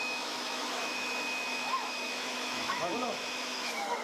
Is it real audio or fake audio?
fake